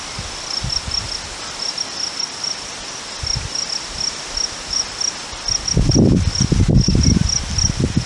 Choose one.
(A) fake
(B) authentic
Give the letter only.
B